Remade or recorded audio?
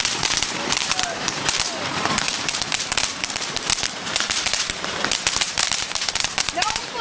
remade